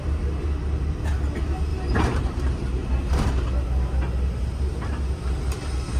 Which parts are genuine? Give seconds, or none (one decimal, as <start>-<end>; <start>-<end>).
0.0-1.7; 3.2-6.0